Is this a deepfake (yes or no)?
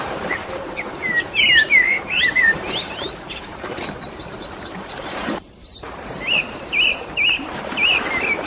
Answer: yes